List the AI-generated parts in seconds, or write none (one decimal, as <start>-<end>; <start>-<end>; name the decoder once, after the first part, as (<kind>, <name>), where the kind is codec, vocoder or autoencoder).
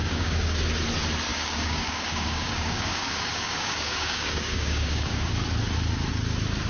0.0-0.6 (codec, DAC); 1.3-5.3